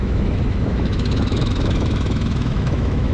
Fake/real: fake